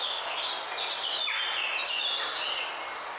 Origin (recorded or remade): recorded